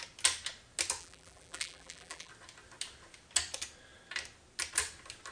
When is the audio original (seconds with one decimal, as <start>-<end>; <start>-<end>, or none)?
0.0-1.0; 2.3-5.3